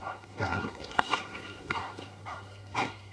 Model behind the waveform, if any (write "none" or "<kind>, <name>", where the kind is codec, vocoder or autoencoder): codec, SNAC